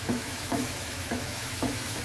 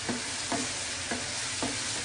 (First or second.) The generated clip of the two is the first